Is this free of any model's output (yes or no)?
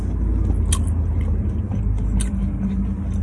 yes